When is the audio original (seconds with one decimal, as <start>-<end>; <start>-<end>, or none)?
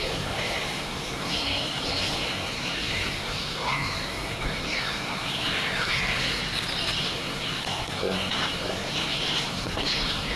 6.4-7.0